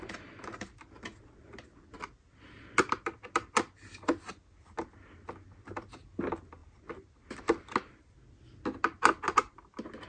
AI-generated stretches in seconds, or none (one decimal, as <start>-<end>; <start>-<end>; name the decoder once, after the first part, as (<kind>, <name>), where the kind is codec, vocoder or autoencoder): none